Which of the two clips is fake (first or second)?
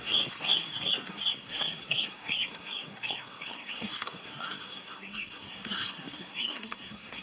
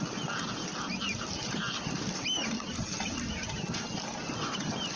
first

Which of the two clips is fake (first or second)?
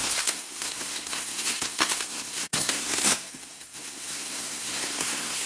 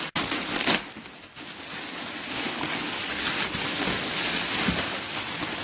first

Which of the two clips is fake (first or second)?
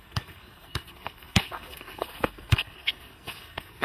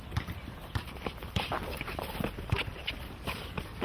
first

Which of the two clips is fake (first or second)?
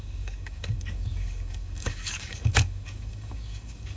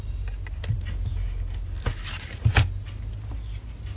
first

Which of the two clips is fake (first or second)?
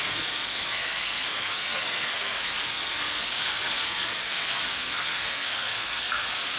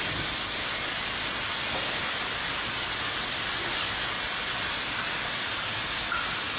first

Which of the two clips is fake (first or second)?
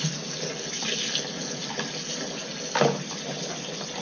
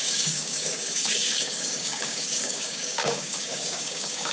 second